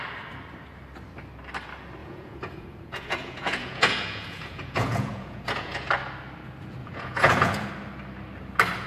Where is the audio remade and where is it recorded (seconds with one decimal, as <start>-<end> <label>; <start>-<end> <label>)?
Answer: 0.0-2.0 recorded; 2.0-5.9 remade; 5.9-6.8 recorded; 6.8-7.7 remade; 7.7-8.9 recorded